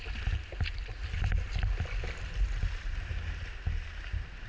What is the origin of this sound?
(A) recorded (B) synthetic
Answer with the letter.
A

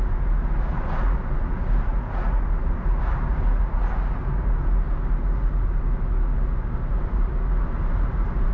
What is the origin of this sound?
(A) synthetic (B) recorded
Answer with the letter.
B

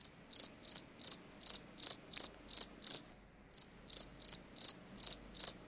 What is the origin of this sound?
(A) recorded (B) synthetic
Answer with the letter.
A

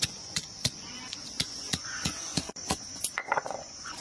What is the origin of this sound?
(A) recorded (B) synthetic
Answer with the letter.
B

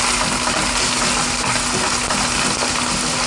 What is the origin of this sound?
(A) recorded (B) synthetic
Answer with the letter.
A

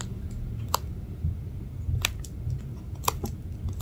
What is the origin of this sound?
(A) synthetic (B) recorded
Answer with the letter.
B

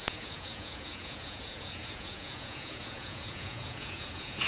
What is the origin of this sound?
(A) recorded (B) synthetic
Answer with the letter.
B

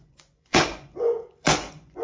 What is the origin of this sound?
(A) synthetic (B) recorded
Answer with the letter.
A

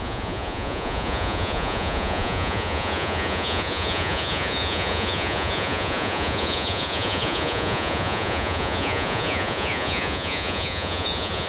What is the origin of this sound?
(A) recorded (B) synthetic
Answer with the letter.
B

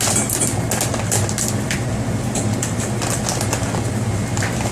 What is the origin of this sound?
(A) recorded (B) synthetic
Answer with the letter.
A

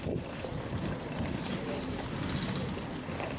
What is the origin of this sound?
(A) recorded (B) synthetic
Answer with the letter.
A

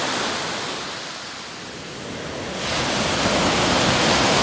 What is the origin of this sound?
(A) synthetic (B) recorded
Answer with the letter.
B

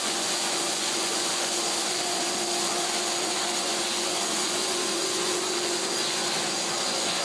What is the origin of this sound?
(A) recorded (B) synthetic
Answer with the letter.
B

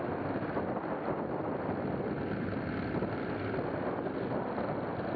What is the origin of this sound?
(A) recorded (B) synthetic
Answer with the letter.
A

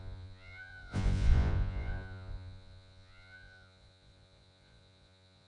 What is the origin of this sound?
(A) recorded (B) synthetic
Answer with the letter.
B